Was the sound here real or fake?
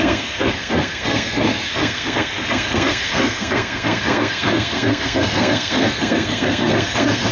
fake